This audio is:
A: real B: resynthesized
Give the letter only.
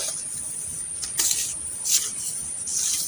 A